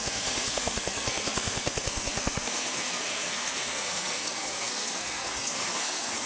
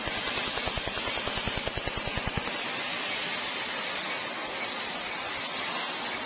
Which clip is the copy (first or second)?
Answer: first